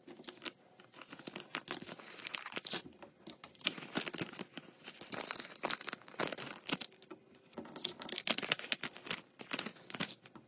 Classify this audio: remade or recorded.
recorded